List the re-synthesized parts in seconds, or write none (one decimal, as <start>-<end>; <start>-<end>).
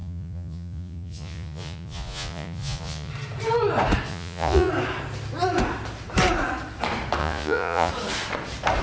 0.0-3.1; 4.1-4.7; 7.2-7.9